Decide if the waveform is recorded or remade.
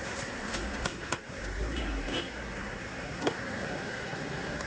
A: remade